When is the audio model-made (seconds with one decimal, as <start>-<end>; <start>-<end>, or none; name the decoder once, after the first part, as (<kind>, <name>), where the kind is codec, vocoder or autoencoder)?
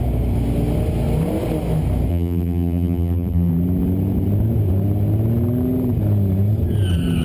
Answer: 2.1-3.5 (vocoder, BigVGAN v2)